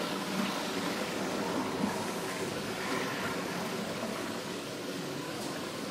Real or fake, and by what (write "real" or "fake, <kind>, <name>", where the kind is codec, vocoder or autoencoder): fake, codec, DAC